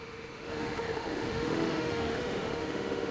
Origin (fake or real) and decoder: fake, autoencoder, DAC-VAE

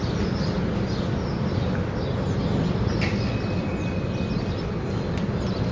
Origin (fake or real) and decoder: real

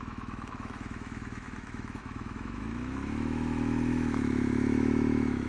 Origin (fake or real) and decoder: fake, autoencoder, DAC-VAE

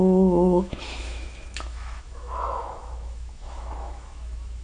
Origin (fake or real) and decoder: fake, autoencoder, DAC-VAE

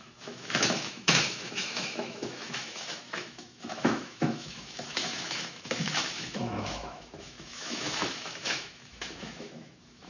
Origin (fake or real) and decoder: fake, autoencoder, DAC-VAE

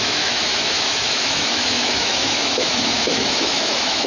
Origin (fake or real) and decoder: fake, autoencoder, DAC-VAE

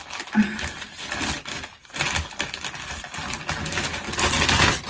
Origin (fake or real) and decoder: real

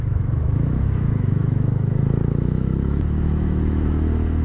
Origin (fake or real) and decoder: fake, autoencoder, DAC-VAE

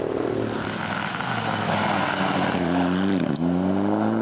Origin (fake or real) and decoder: real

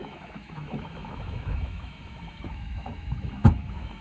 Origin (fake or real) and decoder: fake, autoencoder, DAC-VAE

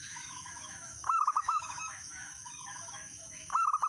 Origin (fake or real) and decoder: fake, autoencoder, DAC-VAE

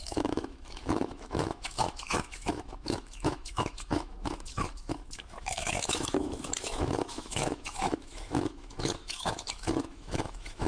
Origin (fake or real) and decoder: fake, autoencoder, DAC-VAE